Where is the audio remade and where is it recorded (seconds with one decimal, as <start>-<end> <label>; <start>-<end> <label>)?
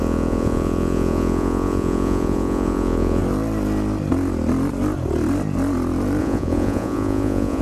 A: 0.0-3.2 remade; 3.2-6.2 recorded; 6.2-7.6 remade